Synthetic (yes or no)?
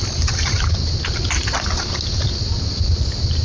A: no